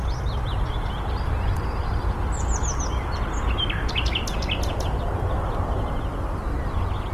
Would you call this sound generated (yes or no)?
no